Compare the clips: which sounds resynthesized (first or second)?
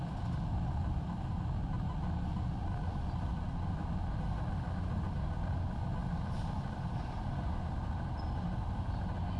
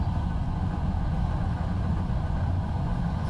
second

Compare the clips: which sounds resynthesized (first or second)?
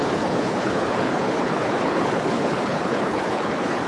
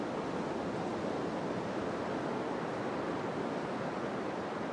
first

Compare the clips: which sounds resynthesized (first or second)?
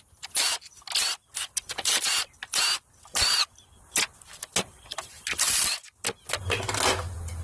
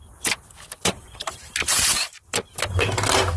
second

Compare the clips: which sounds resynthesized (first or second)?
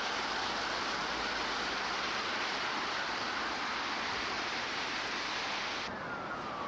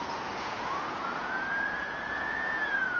second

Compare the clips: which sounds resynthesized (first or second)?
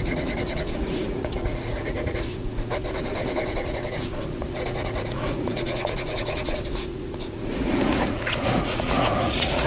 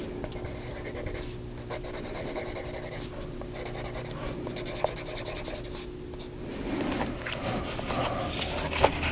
first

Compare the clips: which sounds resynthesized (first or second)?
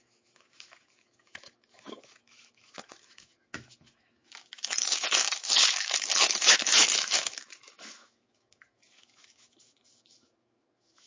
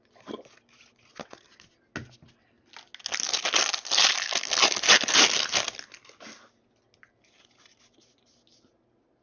first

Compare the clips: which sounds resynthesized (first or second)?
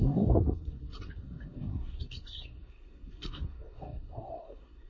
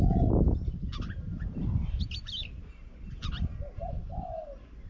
first